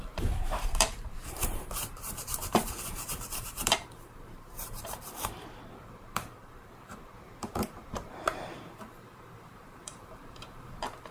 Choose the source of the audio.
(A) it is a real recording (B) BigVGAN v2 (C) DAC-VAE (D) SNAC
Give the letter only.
B